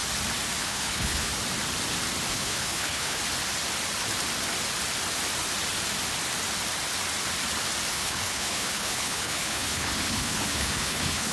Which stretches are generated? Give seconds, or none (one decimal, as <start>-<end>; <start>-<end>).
0.6-1.3; 2.3-3.2; 7.9-11.3